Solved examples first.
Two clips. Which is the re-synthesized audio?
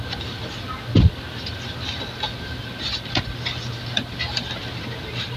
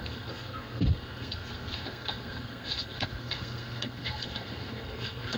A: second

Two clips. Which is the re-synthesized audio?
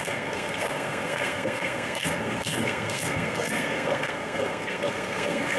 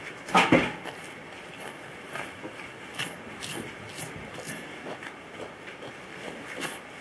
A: first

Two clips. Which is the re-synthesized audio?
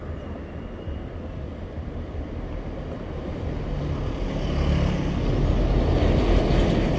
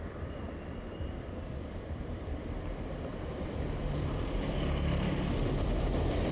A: second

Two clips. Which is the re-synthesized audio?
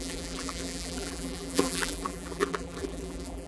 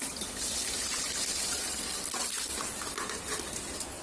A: first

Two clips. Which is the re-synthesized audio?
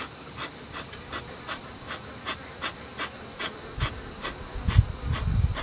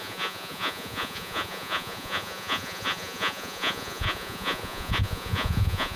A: second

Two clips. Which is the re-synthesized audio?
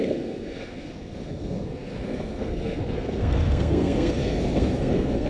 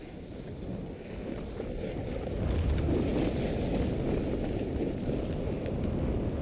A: first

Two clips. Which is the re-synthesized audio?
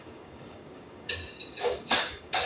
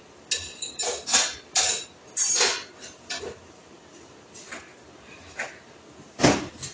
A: first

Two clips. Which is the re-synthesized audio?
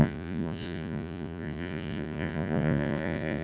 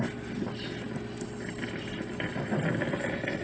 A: first